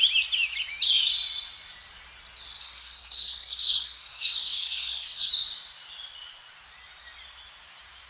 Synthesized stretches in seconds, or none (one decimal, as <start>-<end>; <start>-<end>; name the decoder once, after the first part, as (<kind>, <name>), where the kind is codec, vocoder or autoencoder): 2.6-5.3 (codec, SNAC)